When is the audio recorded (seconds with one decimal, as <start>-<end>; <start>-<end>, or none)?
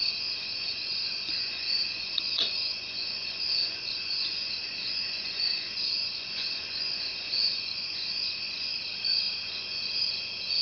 8.7-9.4